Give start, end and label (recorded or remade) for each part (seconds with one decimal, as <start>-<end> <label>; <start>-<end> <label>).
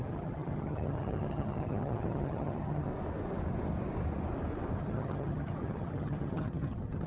0.0-2.9 remade; 2.9-4.8 recorded; 4.8-7.1 remade